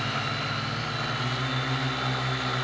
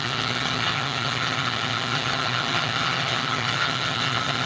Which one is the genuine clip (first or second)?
first